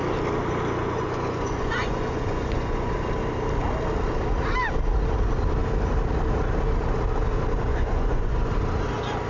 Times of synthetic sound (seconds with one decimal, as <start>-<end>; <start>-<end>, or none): 0.8-2.9; 7.7-8.5